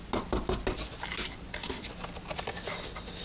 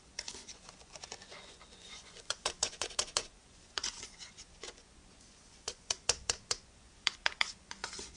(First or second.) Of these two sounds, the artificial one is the second